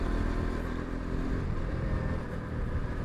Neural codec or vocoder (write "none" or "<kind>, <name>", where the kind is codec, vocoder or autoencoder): none